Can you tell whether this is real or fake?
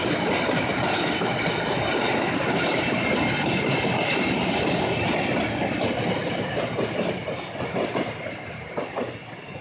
real